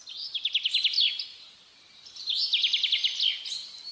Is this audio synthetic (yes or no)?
no